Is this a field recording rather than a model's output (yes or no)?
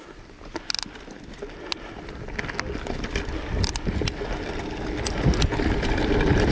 yes